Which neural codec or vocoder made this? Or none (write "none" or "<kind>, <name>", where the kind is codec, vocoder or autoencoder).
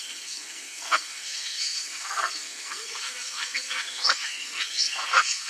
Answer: codec, SNAC